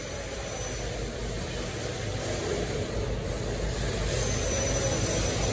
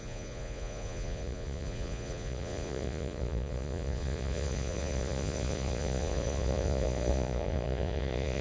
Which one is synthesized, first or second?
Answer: second